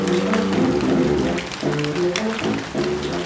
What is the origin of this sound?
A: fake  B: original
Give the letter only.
B